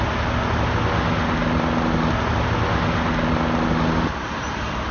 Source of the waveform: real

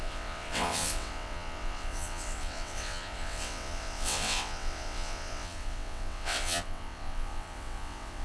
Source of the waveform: fake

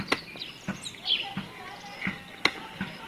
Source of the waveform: real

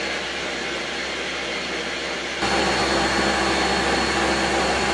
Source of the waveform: real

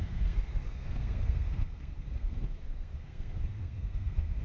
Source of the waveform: fake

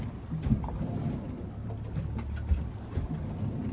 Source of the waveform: real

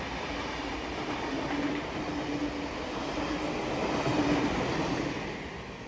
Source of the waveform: real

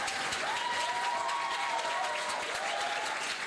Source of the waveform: fake